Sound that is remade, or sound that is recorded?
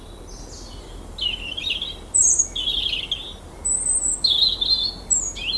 recorded